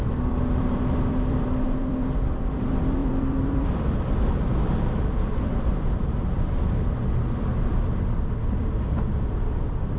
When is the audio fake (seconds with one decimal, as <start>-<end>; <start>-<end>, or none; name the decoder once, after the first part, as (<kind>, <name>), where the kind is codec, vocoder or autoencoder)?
0.0-10.0 (vocoder, BigVGAN v2)